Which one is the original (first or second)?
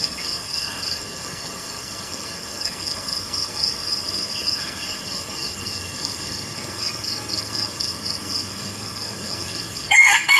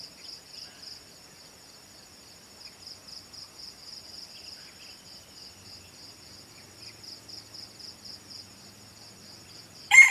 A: second